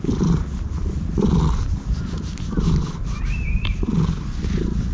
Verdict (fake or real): real